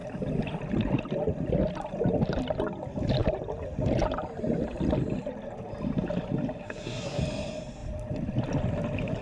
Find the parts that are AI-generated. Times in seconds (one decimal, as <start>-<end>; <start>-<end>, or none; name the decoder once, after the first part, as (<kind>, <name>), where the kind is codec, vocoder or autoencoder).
6.6-7.2 (codec, SNAC)